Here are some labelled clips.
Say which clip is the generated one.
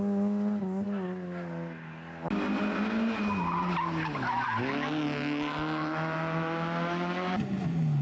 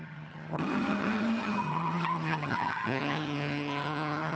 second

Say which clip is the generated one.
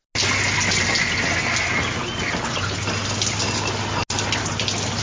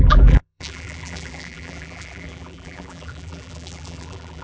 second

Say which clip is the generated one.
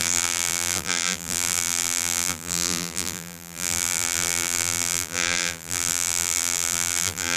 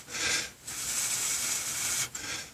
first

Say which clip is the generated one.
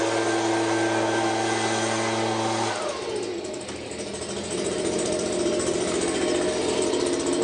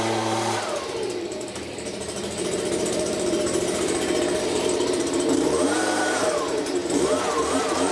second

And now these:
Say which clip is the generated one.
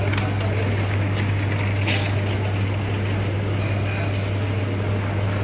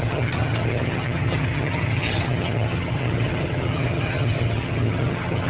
second